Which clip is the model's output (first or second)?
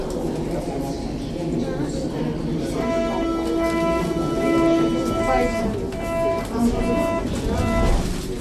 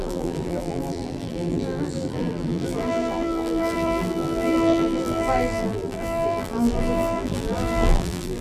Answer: second